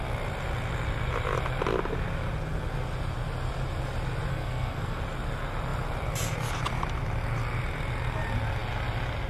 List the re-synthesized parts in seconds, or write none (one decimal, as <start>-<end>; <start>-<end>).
4.3-5.0